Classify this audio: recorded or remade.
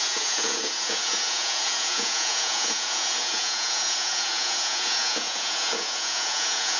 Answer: remade